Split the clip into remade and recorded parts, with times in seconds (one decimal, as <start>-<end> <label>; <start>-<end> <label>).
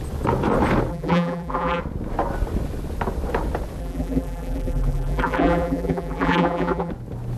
0.0-0.9 recorded; 0.9-1.8 remade; 1.8-3.8 recorded; 3.8-6.9 remade; 6.9-7.4 recorded